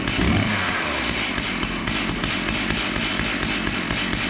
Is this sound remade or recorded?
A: recorded